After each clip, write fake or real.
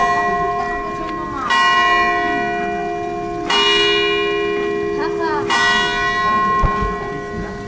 real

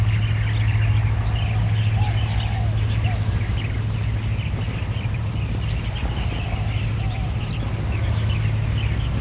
real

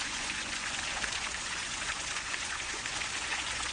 fake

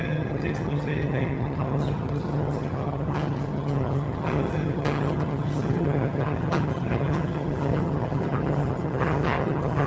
fake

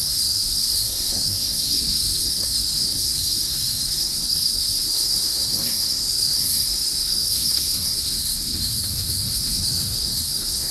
fake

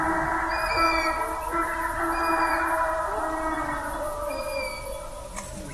real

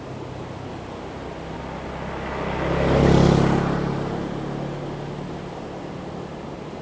real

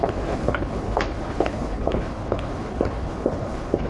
fake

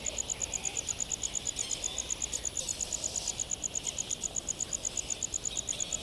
real